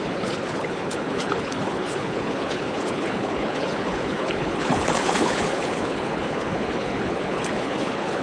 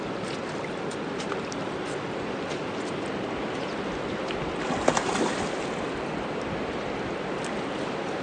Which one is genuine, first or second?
second